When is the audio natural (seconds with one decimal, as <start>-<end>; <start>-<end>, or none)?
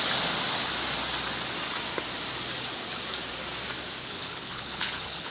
0.0-4.0